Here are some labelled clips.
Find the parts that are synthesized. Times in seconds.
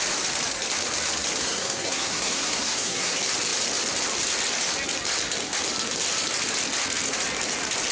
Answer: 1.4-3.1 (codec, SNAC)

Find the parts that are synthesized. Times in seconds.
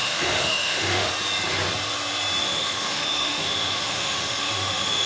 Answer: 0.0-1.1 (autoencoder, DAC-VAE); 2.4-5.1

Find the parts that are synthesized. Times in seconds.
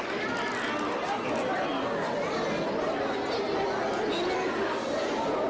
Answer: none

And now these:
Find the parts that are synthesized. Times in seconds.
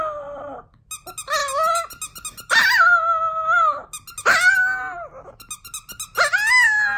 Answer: none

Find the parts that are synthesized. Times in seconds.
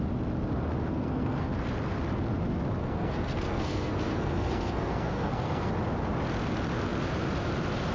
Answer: 0.9-1.5 (codec, SNAC); 2.8-5.7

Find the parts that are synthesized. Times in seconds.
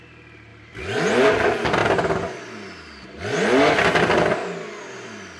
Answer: none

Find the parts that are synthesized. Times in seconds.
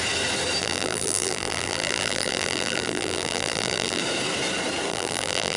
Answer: 0.6-4.0 (vocoder, BigVGAN v2); 4.9-5.6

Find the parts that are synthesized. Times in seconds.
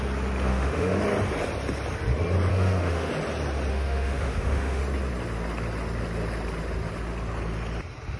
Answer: 0.5-1.0 (autoencoder, DAC-VAE); 2.5-3.1; 3.7-4.8